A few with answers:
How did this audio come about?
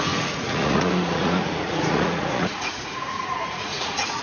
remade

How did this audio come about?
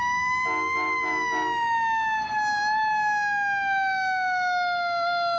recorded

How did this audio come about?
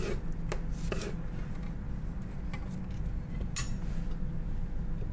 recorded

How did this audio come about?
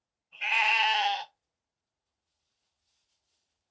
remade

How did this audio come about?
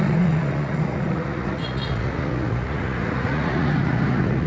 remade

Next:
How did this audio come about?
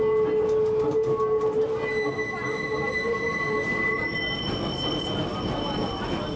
recorded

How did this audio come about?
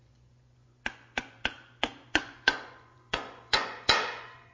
remade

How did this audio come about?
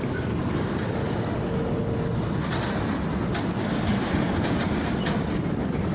recorded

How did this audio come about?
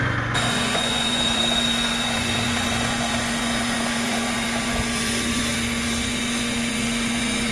remade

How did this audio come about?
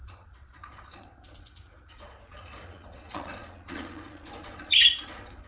remade